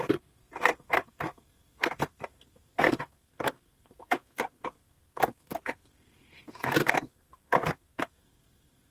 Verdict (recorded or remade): remade